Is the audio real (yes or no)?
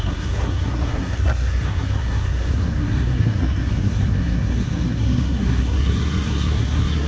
no